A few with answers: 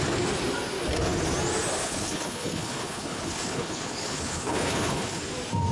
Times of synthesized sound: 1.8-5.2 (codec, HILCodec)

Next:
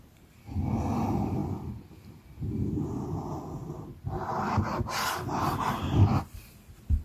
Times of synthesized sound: none

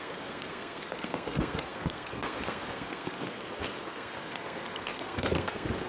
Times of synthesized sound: 0.0-5.9 (codec, SNAC)